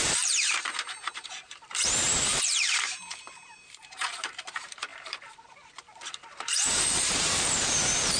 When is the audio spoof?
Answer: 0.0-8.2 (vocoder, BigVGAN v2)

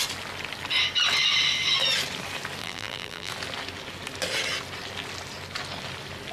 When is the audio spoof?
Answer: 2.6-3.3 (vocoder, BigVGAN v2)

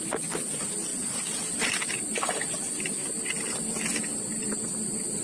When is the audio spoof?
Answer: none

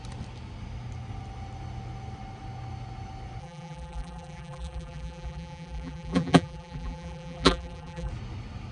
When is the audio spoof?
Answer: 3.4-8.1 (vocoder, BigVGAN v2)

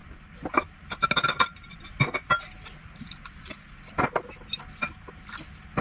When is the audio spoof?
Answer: none